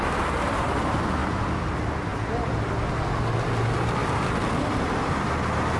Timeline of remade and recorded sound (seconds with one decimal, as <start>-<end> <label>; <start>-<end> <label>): 0.0-1.2 recorded; 1.2-1.7 remade; 1.7-2.1 recorded; 2.1-3.2 remade; 3.2-4.0 recorded; 4.0-5.2 remade; 5.2-5.8 recorded